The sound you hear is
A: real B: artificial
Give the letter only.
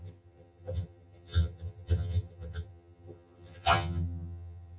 B